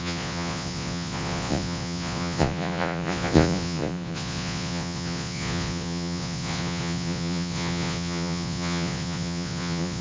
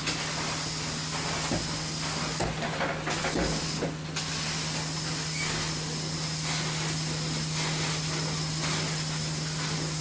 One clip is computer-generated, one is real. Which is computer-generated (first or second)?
first